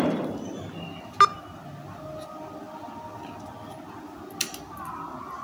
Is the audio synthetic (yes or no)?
no